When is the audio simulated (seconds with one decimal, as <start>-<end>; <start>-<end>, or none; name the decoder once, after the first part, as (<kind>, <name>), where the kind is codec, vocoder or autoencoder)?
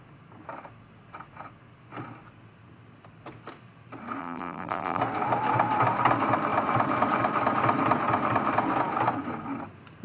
4.2-5.0 (vocoder, BigVGAN v2)